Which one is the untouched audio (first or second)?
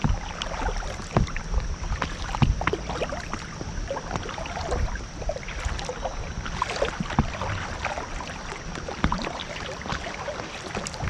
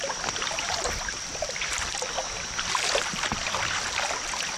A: first